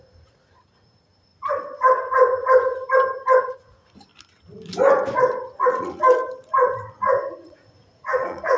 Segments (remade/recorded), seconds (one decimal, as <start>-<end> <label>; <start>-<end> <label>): 0.0-1.3 remade; 1.3-3.4 recorded; 3.4-4.1 remade; 4.1-5.6 recorded; 5.6-6.0 remade; 6.0-7.3 recorded; 7.3-8.6 remade